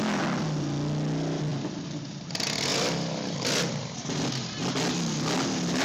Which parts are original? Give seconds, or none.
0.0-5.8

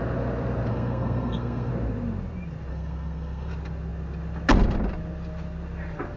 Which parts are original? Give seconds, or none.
0.0-0.7; 1.7-2.7; 3.5-6.2

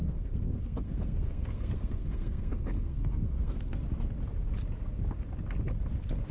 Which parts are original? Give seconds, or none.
3.8-6.3